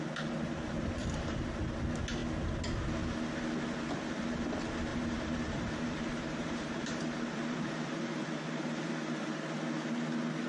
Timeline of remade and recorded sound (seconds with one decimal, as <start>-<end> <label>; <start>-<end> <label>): 0.0-1.0 recorded; 1.0-1.6 remade; 1.6-4.9 recorded; 4.9-9.4 remade; 9.4-10.5 recorded